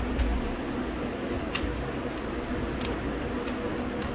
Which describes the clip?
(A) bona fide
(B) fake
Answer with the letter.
A